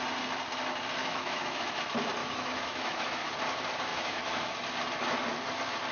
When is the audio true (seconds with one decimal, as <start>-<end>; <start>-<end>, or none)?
0.0-1.0; 1.8-2.2; 3.3-3.9; 4.5-5.9